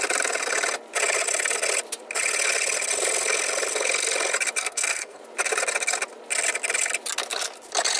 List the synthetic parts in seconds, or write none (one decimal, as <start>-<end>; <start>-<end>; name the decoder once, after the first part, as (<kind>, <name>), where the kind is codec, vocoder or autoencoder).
4.6-5.2 (codec, SNAC)